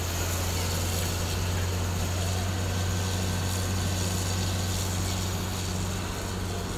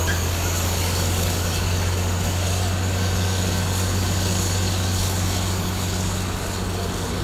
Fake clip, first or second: second